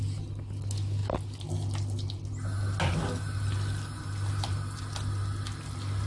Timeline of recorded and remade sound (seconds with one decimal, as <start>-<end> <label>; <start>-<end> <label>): 0.0-6.1 recorded